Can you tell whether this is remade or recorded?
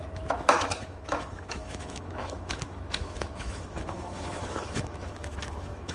remade